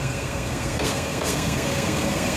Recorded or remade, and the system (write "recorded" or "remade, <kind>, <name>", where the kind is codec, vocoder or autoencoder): remade, codec, SNAC